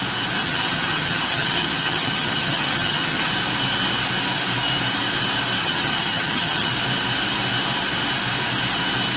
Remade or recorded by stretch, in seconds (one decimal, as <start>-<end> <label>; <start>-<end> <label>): 0.0-0.4 recorded; 0.4-3.3 remade; 3.3-5.6 recorded; 5.6-6.7 remade; 6.7-9.2 recorded